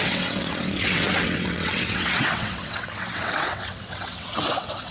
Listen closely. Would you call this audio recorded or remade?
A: remade